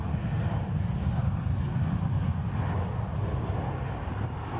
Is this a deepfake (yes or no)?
no